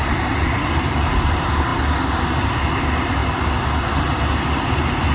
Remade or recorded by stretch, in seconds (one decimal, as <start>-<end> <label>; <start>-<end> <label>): 0.0-3.2 remade; 3.2-4.5 recorded; 4.5-5.1 remade